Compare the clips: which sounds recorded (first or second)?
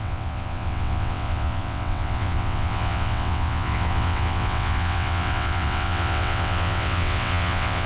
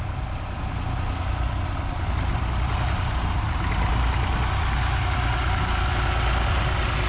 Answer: second